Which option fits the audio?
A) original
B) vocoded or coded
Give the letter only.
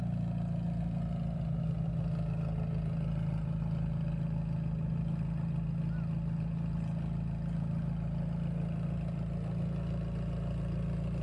A